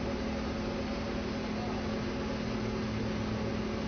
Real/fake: real